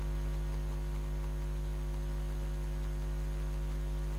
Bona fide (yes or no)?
yes